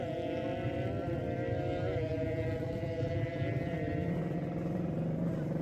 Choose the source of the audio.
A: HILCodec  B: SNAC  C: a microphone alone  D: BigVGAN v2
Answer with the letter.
D